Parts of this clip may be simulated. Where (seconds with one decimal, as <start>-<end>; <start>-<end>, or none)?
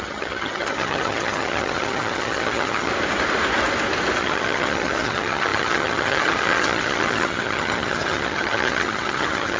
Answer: 0.0-2.9; 4.2-9.6